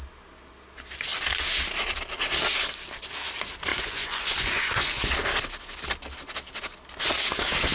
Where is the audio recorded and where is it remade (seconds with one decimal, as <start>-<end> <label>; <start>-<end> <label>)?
0.0-3.7 recorded; 3.7-5.1 remade; 5.1-7.7 recorded